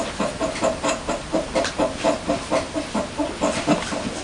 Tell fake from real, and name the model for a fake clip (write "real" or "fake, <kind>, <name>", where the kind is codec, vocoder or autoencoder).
real